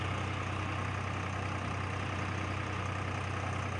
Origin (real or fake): real